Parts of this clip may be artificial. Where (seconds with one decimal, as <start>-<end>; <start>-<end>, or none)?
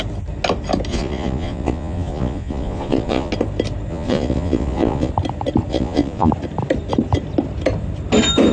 0.9-3.3; 3.9-5.1; 5.7-6.3